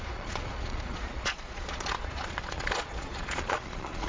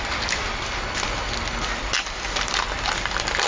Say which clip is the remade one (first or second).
first